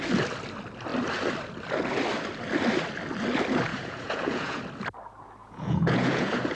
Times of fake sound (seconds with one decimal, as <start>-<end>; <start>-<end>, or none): 3.7-4.6; 5.4-6.5